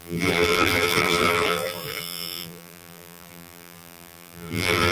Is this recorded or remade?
remade